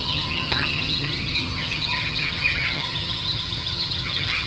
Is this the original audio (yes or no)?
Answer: no